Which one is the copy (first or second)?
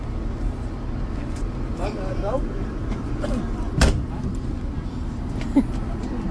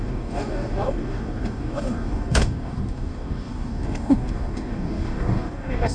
second